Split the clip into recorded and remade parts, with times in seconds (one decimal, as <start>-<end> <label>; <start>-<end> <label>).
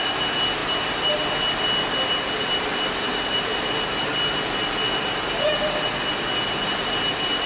0.0-7.5 recorded